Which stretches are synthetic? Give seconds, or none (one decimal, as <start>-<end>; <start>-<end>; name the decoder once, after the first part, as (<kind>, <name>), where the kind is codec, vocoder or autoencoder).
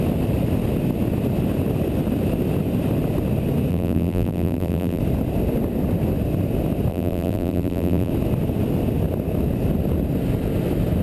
3.7-5.0 (vocoder, BigVGAN v2); 6.9-8.1